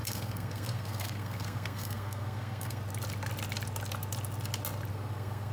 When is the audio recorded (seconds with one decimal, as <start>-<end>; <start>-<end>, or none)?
2.8-4.9